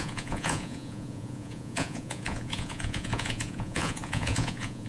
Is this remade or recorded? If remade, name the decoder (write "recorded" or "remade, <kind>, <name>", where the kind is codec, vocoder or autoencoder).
remade, vocoder, Vocos